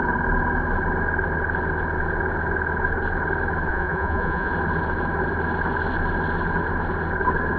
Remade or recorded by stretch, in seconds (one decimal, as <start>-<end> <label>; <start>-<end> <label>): 0.0-3.7 recorded; 3.7-4.5 remade; 4.5-7.6 recorded